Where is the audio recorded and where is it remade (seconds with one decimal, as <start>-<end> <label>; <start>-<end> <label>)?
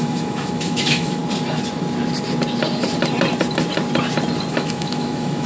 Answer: 0.0-1.2 remade; 1.2-4.5 recorded; 4.5-5.5 remade